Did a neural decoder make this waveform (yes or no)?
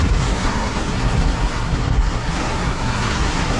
yes